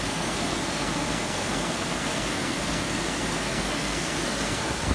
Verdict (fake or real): fake